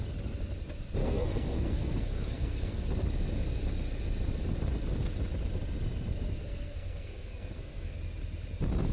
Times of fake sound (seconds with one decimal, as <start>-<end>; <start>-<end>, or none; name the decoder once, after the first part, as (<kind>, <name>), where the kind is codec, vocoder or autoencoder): 1.0-2.9 (codec, SNAC); 6.4-8.0